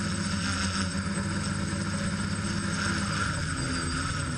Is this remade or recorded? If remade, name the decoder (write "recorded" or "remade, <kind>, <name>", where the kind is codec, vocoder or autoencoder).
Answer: recorded